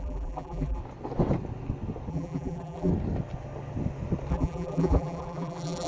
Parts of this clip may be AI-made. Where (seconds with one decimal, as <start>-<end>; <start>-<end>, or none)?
0.0-0.8; 2.1-2.9; 4.3-5.9